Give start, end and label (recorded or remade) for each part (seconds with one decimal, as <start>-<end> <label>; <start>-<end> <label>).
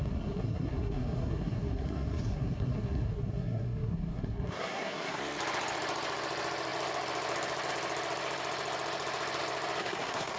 0.0-5.2 remade; 5.2-9.8 recorded; 9.8-10.4 remade